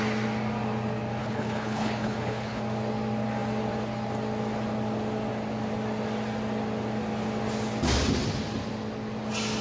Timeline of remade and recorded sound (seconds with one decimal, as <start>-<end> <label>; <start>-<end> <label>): 0.0-1.2 recorded; 1.2-2.6 remade; 2.6-9.6 recorded